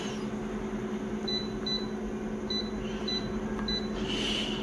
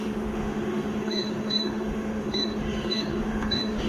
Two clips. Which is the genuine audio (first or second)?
first